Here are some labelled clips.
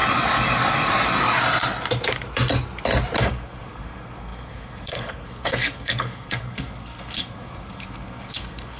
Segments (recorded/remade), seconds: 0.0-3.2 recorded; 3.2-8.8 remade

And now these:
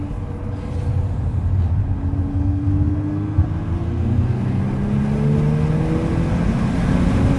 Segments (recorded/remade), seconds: 0.0-2.3 recorded; 2.3-4.6 remade; 4.6-7.4 recorded

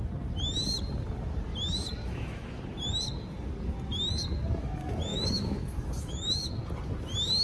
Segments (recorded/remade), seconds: 0.0-2.0 recorded; 2.0-2.6 remade; 2.6-5.1 recorded; 5.1-6.5 remade; 6.5-7.4 recorded

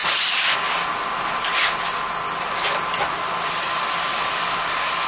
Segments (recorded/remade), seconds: 0.0-5.1 recorded